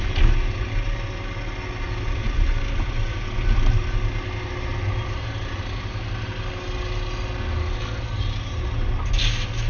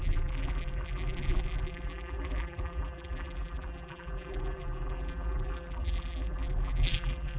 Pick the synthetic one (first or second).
second